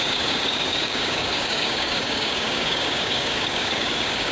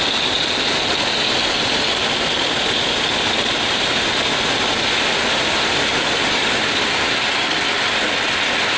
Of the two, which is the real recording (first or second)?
second